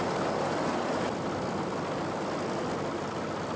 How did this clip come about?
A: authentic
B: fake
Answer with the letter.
A